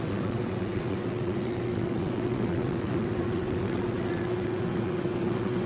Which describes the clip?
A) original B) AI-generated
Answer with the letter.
B